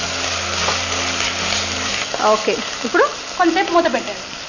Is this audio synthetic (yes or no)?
no